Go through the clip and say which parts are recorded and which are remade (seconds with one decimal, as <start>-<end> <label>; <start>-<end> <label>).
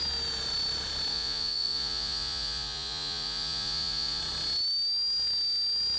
0.0-1.1 recorded; 1.1-4.2 remade; 4.2-6.0 recorded